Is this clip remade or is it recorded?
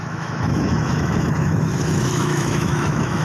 remade